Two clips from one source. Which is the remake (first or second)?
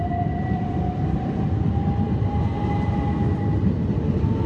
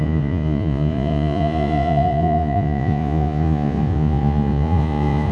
second